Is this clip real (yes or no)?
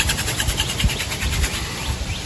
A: yes